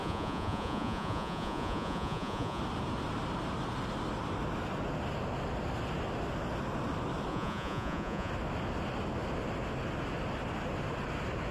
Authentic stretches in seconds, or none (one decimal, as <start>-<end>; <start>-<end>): 2.6-7.3; 8.3-11.5